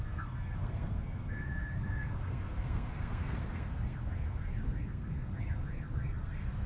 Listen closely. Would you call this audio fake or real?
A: fake